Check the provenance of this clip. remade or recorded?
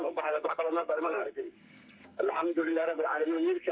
remade